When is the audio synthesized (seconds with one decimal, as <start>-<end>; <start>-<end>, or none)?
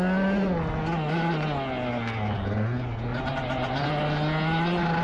3.1-3.9